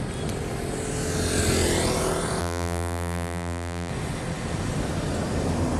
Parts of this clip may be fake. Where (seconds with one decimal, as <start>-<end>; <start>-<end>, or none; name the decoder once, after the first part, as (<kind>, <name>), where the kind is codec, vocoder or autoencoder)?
2.4-3.9 (vocoder, BigVGAN v2)